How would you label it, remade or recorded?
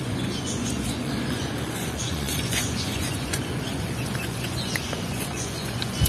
remade